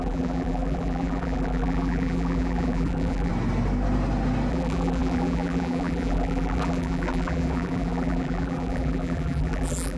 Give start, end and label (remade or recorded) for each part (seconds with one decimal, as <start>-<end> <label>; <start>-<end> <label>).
0.0-3.3 remade; 3.3-4.5 recorded; 4.5-10.0 remade